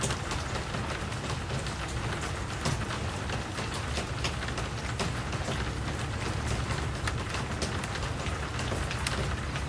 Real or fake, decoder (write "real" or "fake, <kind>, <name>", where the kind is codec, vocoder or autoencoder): real